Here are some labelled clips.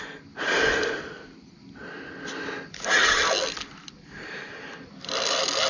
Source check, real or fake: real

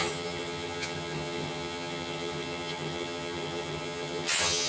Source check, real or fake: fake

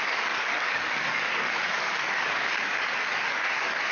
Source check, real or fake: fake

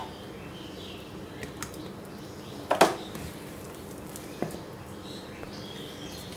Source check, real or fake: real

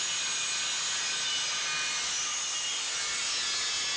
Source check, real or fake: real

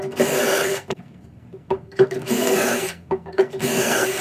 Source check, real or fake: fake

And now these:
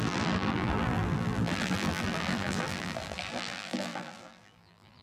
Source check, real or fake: fake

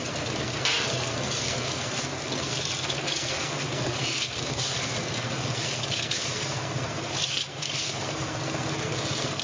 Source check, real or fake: fake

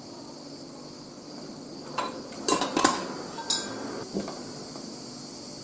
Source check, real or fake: real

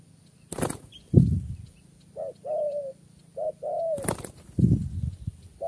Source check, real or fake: real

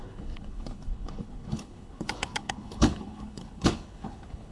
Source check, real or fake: fake